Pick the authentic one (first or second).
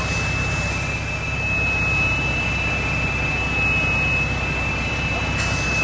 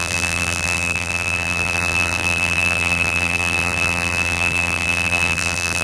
first